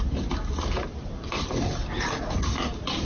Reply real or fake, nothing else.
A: real